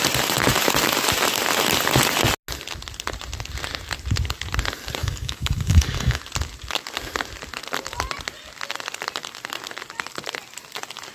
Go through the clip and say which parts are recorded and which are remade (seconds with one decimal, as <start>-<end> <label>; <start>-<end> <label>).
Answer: 0.0-5.0 recorded; 5.0-6.2 remade; 6.2-11.1 recorded